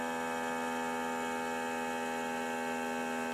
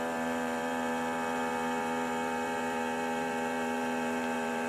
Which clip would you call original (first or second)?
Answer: first